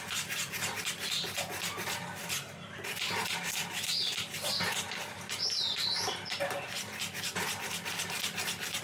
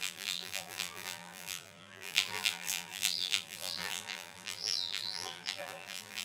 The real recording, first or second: first